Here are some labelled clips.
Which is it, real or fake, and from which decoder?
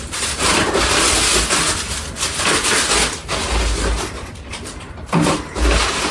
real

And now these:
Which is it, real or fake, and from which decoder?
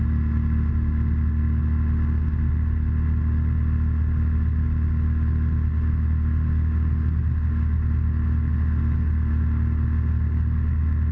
real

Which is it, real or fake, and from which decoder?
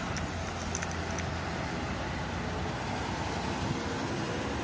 real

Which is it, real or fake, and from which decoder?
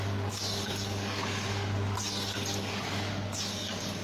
fake, codec, DAC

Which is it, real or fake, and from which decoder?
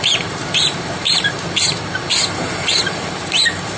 fake, vocoder, BigVGAN v2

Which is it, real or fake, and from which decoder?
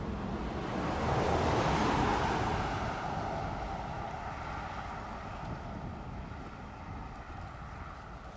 real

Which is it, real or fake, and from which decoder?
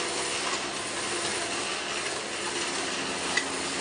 real